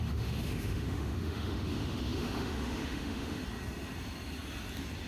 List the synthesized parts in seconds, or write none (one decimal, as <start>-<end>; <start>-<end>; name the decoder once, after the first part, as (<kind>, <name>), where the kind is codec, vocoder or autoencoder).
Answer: 0.0-3.4 (autoencoder, DAC-VAE)